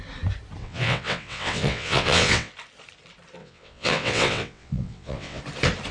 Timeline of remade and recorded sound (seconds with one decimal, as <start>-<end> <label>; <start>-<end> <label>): 0.0-0.6 recorded; 0.6-2.5 remade; 2.5-3.4 recorded; 3.4-5.4 remade; 5.4-5.9 recorded